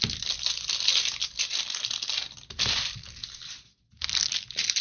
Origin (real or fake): real